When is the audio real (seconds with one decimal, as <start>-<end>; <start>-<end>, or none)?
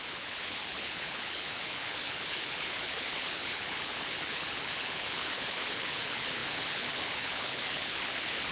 none